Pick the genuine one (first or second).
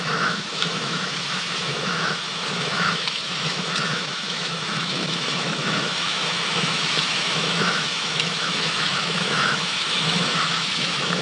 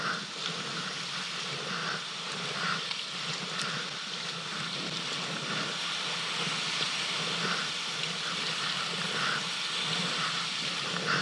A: second